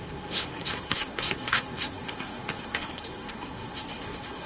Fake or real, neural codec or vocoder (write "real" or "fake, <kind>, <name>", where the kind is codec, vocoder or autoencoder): fake, codec, SNAC